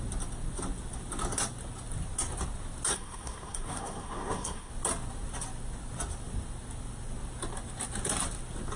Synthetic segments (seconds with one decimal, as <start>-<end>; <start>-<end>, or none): 2.9-4.7

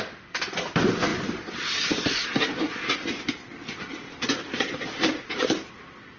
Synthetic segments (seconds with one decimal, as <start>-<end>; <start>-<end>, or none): none